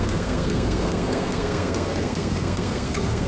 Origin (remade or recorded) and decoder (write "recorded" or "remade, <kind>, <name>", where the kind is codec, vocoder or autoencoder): remade, codec, SNAC